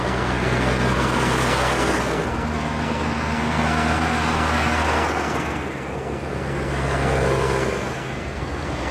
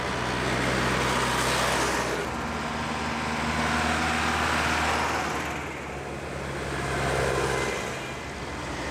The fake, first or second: first